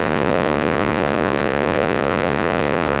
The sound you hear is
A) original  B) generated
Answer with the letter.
B